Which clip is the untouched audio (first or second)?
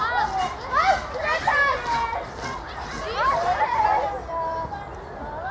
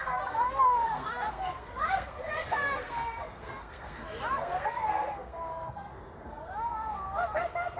first